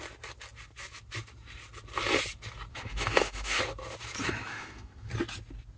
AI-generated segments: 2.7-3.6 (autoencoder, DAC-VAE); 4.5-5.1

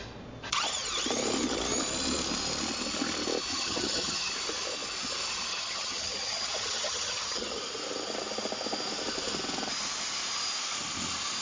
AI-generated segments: 3.5-4.3 (vocoder, HiFi-GAN); 5.5-7.6

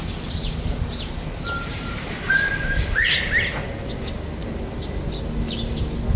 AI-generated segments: 1.7-2.3 (vocoder, BigVGAN v2)

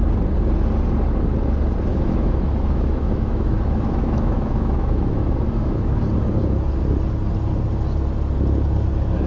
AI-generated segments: 1.9-6.0 (autoencoder, DAC-VAE)

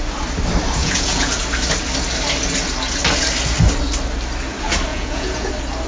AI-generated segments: 0.8-1.4 (vocoder, Vocos); 4.9-5.5